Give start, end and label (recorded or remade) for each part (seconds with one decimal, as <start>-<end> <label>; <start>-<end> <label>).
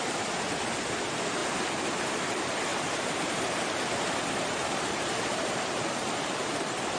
0.0-2.7 recorded; 2.7-6.6 remade; 6.6-7.0 recorded